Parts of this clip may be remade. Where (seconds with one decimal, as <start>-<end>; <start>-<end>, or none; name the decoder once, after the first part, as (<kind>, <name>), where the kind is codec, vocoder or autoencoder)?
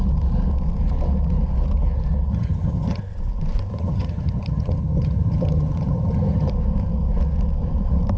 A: 2.3-3.0 (vocoder, HiFi-GAN); 3.7-6.5